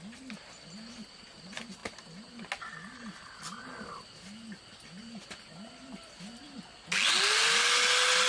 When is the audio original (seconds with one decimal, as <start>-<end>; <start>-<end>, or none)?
0.0-8.3